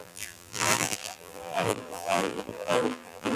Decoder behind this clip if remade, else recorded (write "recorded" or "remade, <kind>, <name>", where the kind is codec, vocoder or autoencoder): remade, vocoder, BigVGAN v2